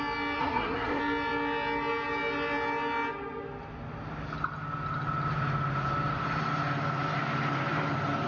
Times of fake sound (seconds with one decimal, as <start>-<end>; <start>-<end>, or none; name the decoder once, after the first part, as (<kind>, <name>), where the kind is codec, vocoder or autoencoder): 0.4-1.0 (codec, SNAC)